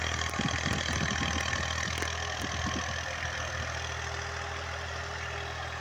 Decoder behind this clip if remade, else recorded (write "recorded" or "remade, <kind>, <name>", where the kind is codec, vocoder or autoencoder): recorded